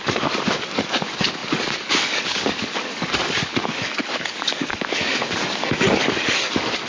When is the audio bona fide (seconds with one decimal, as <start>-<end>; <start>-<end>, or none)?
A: none